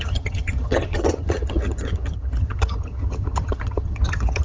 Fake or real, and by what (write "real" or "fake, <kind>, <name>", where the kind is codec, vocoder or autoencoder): fake, vocoder, HiFi-GAN